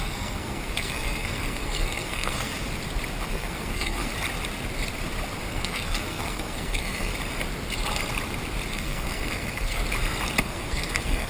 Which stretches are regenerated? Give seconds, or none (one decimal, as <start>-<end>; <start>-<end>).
0.0-2.5; 3.3-4.1; 5.5-7.1; 8.7-9.8; 10.4-11.3